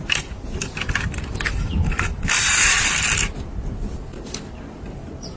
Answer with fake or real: real